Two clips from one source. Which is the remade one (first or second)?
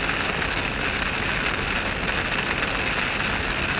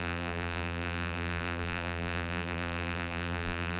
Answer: second